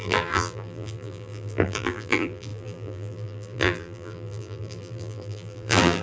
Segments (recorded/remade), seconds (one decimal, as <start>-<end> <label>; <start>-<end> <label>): 0.0-6.0 remade